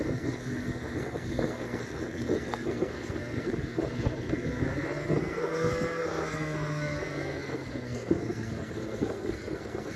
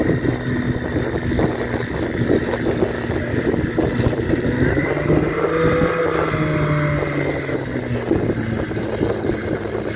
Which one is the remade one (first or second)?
first